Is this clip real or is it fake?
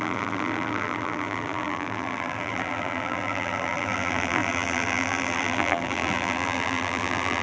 fake